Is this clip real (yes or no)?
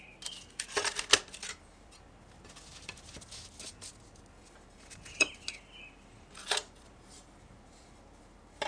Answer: yes